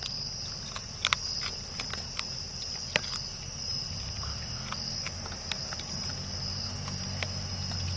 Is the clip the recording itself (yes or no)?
yes